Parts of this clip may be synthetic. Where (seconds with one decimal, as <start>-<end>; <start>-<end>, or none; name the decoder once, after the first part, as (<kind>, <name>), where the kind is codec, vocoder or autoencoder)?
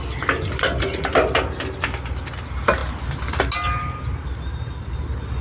none